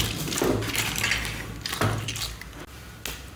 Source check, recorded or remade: recorded